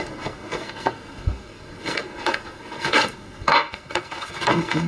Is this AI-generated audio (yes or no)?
yes